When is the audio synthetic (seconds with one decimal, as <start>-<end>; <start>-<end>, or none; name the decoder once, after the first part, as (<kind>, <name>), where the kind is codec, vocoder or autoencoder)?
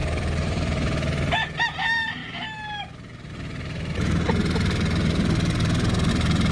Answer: 0.0-1.4 (vocoder, BigVGAN v2)